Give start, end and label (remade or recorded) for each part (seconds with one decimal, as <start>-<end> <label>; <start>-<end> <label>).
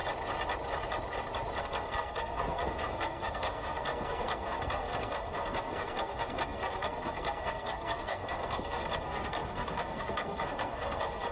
0.0-1.6 recorded; 1.6-11.3 remade